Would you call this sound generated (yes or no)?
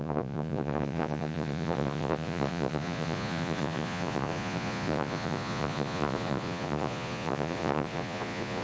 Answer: yes